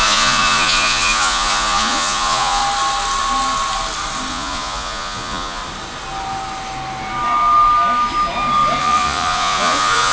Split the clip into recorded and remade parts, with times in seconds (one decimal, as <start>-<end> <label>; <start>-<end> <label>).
0.0-2.6 remade; 2.6-4.3 recorded; 4.3-5.6 remade; 5.6-8.8 recorded; 8.8-10.1 remade